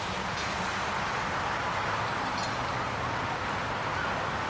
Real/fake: real